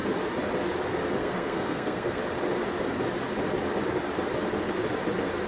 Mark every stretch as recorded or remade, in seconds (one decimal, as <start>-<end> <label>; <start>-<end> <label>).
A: 0.0-1.2 recorded; 1.2-2.2 remade; 2.2-5.5 recorded